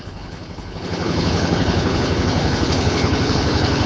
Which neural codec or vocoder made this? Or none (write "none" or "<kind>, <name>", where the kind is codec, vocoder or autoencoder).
codec, HILCodec